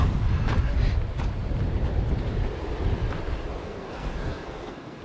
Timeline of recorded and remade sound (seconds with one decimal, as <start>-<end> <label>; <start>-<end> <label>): 0.0-3.6 recorded; 3.6-5.0 remade